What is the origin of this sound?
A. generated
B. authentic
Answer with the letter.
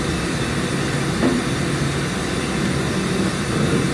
B